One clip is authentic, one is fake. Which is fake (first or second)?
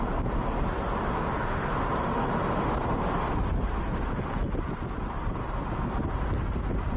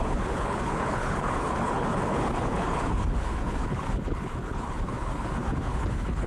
second